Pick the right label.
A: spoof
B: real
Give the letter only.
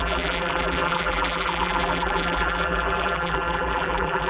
A